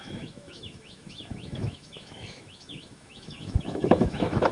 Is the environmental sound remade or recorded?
remade